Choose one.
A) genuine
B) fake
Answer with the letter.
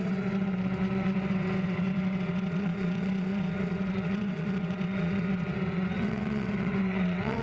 B